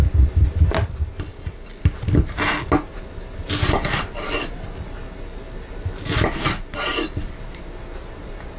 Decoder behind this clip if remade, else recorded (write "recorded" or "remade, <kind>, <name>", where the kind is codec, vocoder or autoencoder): recorded